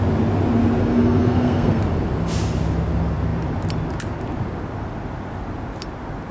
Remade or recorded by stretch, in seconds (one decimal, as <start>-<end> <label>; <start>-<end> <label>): 0.0-0.8 recorded; 0.8-1.8 remade; 1.8-6.3 recorded